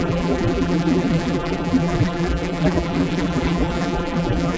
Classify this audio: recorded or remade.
remade